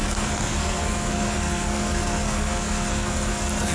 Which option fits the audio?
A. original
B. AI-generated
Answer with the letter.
B